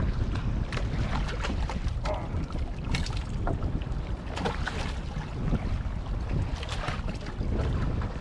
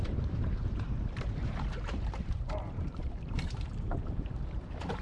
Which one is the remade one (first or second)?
second